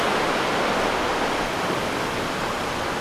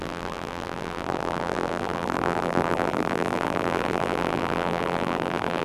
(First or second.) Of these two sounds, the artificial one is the second